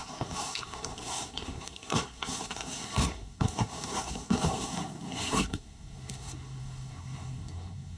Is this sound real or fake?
fake